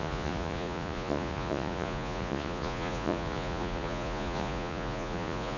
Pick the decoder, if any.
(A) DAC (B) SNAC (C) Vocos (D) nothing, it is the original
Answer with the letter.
C